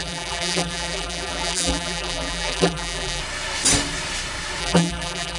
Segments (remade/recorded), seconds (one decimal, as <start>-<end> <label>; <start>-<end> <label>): 0.0-3.2 remade; 3.2-4.6 recorded; 4.6-5.4 remade